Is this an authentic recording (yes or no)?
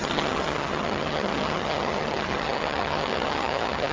no